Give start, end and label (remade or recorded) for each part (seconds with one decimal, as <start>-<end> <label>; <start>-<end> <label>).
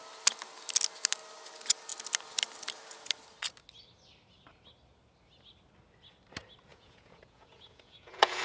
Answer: 0.0-6.7 recorded; 6.7-8.4 remade